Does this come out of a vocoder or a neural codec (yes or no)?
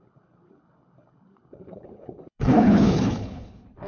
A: yes